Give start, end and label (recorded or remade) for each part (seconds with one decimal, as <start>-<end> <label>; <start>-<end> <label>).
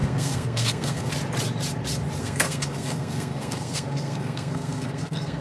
0.0-1.1 remade; 1.1-2.2 recorded; 2.2-5.4 remade